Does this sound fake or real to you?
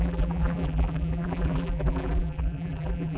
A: fake